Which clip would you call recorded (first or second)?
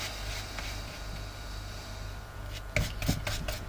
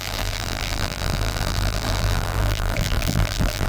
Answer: first